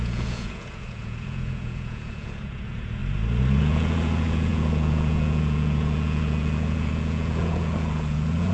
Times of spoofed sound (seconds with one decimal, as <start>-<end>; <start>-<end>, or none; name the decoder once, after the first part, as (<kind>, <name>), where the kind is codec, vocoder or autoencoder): 0.0-3.0 (vocoder, Vocos); 3.6-8.5